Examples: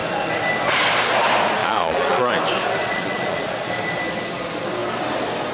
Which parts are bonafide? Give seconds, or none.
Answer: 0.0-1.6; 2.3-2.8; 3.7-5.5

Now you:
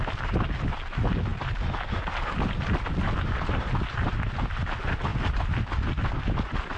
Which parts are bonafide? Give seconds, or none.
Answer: 0.0-6.8

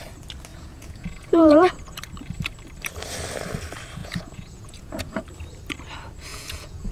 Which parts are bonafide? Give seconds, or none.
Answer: 0.0-0.5; 1.7-4.0; 5.2-6.3